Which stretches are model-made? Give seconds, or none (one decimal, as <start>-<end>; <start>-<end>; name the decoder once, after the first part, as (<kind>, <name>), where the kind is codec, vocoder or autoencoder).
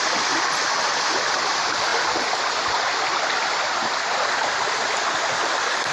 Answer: none